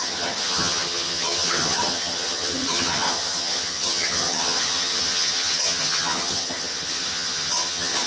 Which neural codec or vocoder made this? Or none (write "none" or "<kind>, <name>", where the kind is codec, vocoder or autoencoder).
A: vocoder, HiFi-GAN